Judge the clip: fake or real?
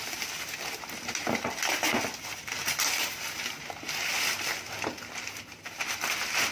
real